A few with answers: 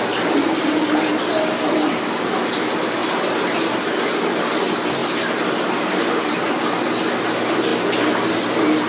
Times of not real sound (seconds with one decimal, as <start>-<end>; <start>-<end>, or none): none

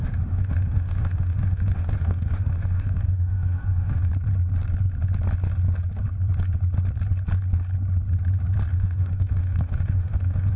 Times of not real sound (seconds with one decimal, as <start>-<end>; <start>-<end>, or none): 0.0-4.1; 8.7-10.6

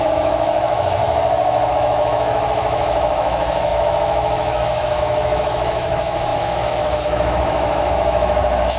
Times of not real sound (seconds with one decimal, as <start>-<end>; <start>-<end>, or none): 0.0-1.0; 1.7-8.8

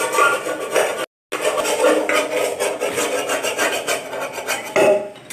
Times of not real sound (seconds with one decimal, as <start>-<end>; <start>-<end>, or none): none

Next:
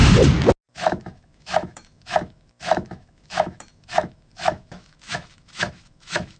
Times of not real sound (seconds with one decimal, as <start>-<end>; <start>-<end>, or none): 0.7-6.4